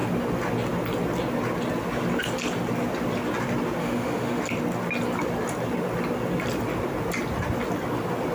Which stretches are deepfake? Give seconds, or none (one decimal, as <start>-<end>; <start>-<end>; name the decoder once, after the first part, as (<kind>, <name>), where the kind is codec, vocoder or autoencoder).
3.8-4.4 (autoencoder, DAC-VAE)